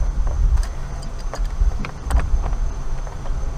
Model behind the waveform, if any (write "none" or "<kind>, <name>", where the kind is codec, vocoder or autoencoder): none